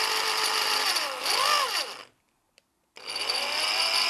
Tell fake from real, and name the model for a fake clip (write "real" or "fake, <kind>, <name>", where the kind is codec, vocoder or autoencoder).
real